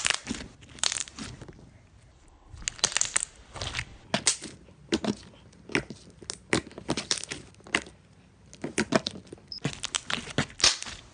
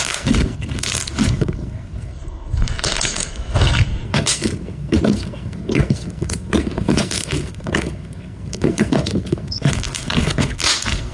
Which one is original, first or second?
first